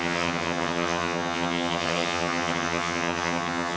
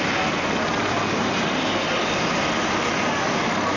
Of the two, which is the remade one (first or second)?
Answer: first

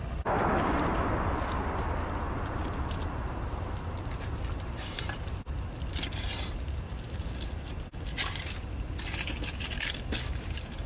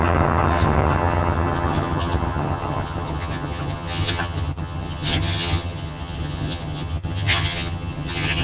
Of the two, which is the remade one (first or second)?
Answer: second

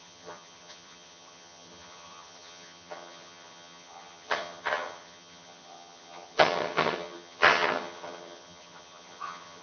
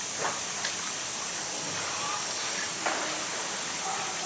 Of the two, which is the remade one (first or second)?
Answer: first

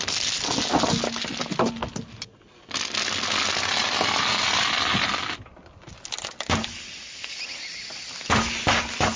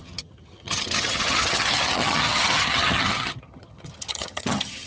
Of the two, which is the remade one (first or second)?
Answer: second